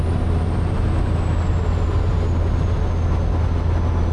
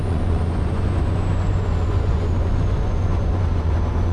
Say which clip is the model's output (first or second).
second